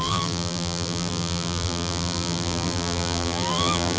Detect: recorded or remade remade